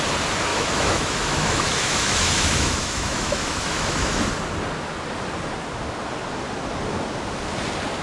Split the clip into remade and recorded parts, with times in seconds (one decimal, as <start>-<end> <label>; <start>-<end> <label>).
0.0-0.5 recorded; 0.5-4.2 remade; 4.2-8.0 recorded